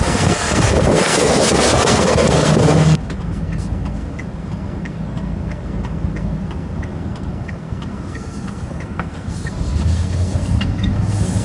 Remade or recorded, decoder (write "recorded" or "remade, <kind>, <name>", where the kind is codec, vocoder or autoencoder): remade, codec, SNAC